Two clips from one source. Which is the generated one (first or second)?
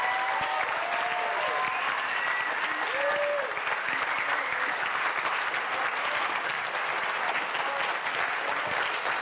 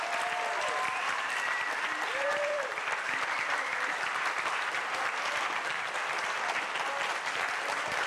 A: second